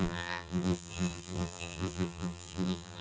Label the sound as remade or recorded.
remade